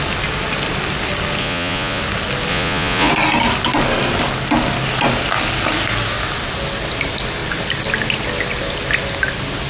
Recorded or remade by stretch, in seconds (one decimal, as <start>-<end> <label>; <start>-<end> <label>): 0.0-1.4 recorded; 1.4-2.0 remade; 2.0-2.5 recorded; 2.5-3.1 remade; 3.1-9.7 recorded